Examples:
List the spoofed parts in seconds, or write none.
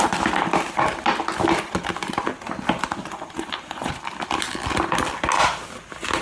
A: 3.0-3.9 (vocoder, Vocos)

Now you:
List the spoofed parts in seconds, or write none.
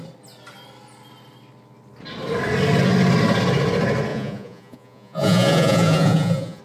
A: 4.1-6.6 (vocoder, Vocos)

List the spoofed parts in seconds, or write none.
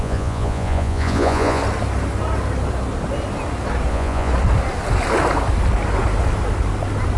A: 0.0-1.6 (vocoder, Vocos); 3.9-4.3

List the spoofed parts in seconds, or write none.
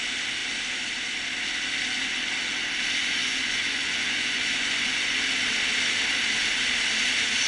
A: 3.0-5.2 (vocoder, Vocos)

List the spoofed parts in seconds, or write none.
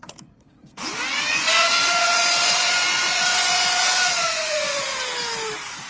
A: 1.3-4.8 (vocoder, Vocos)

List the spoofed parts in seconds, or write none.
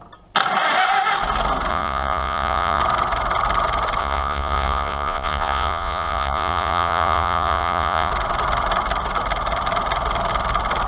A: 1.7-2.8 (vocoder, Vocos); 4.0-8.1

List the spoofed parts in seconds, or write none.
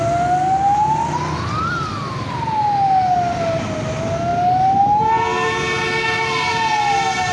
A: none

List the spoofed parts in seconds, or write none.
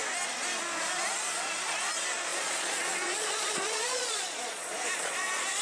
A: 2.3-5.6 (vocoder, Vocos)